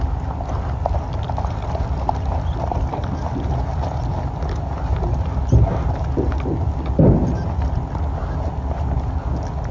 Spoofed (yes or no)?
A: no